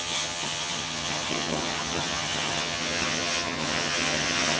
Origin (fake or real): fake